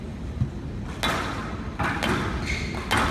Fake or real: real